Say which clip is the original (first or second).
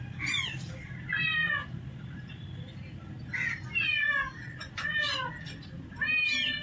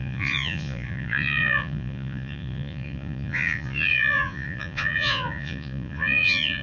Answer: first